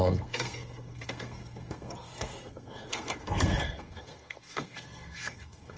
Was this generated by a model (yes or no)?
yes